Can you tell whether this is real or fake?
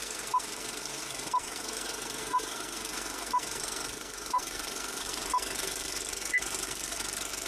fake